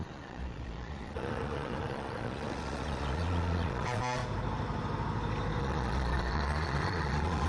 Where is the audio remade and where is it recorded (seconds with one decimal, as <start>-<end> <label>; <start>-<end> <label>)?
0.0-4.2 remade; 4.2-5.6 recorded; 5.6-7.5 remade